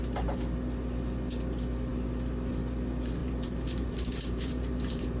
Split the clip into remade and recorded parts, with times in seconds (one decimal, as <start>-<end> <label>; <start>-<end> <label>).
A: 0.0-3.2 recorded; 3.2-5.2 remade